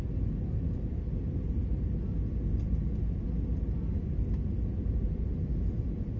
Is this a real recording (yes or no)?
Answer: yes